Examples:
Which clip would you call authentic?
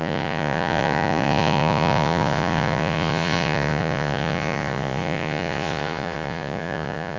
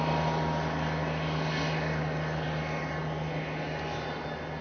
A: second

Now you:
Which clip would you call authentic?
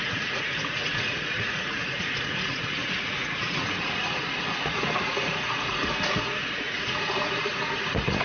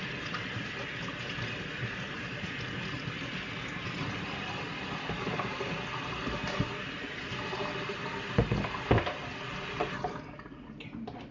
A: second